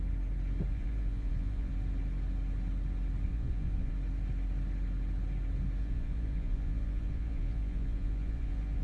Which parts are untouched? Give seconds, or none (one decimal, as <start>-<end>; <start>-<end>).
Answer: 0.0-0.7; 1.7-3.3; 3.9-5.8